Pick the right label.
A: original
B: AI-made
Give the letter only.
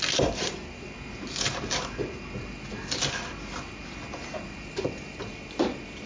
A